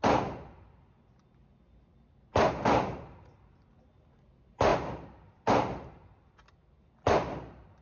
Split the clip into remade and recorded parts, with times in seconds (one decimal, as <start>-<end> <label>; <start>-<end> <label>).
0.0-7.8 recorded